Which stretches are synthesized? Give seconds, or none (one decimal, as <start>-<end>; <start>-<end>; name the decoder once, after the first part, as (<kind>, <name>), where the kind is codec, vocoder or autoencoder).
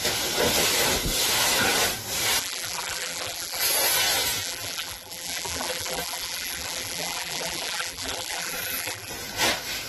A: 2.4-3.6 (vocoder, BigVGAN v2); 4.4-9.1